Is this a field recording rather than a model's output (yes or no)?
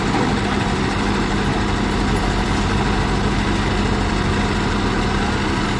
yes